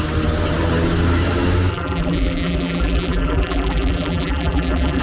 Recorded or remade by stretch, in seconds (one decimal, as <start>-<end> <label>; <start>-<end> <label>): 0.0-1.7 recorded; 1.7-5.0 remade